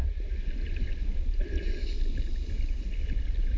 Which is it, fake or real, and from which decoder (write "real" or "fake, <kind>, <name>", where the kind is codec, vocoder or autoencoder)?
real